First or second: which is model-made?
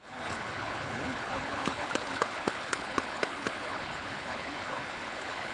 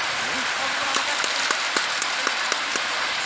first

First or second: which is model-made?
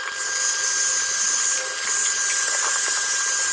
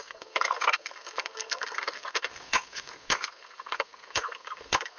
second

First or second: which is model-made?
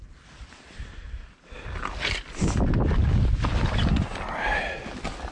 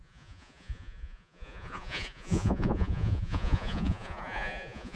second